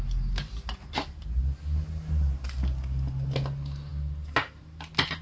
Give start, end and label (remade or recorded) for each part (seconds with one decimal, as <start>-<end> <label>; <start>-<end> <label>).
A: 0.0-5.2 recorded

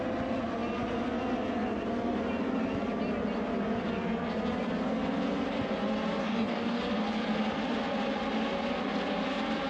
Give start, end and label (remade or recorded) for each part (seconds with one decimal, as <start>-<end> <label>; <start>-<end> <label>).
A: 0.0-6.2 recorded; 6.2-6.8 remade; 6.8-9.7 recorded

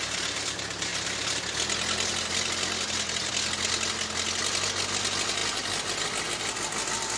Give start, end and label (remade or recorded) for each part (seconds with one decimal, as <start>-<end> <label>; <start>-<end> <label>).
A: 0.0-7.2 recorded

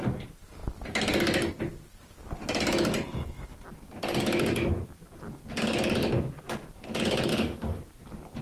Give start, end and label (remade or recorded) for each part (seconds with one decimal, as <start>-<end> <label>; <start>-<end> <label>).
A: 0.0-7.3 recorded; 7.3-7.8 remade; 7.8-8.4 recorded